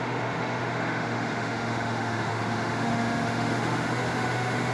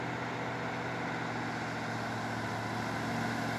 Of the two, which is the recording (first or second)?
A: second